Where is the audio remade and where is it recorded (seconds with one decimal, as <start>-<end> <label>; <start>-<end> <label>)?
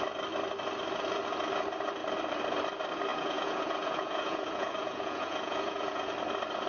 0.0-3.1 recorded; 3.1-6.1 remade; 6.1-6.7 recorded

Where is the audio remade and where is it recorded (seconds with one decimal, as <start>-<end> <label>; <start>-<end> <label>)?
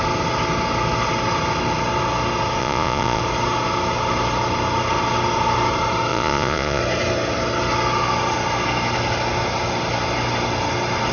0.0-2.6 recorded; 2.6-3.2 remade; 3.2-6.1 recorded; 6.1-6.8 remade; 6.8-11.1 recorded